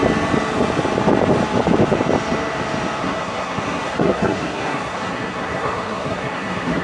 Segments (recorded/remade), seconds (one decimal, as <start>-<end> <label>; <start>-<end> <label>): 0.0-3.0 recorded; 3.0-6.8 remade